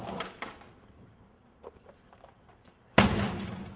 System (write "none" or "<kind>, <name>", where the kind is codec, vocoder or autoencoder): none